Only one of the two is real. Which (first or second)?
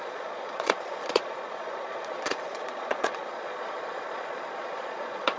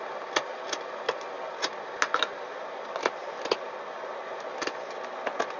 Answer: second